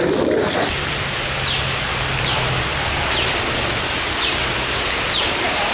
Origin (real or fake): real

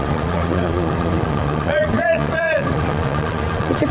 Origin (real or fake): fake